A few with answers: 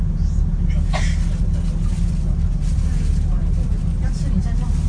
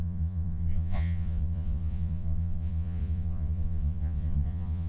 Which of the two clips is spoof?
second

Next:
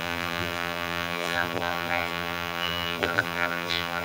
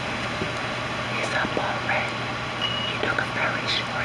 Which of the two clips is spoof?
first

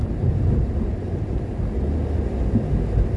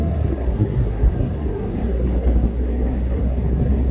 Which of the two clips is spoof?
second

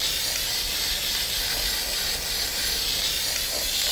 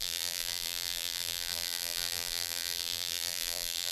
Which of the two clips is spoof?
second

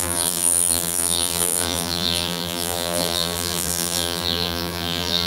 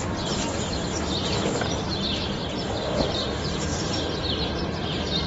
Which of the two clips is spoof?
first